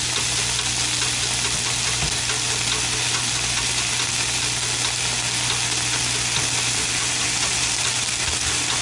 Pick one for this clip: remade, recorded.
recorded